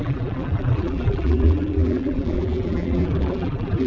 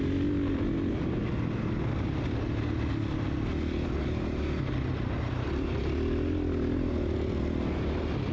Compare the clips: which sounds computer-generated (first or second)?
first